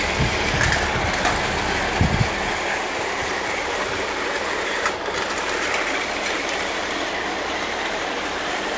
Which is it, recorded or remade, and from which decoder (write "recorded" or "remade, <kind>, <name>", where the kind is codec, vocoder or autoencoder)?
recorded